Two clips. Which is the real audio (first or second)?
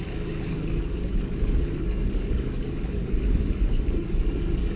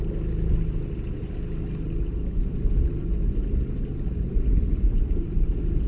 second